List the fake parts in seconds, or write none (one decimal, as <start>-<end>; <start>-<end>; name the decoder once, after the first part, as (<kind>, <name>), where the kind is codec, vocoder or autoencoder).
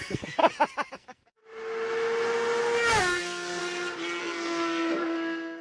0.0-0.4 (codec, SNAC); 0.9-1.4; 3.0-3.6; 4.2-5.6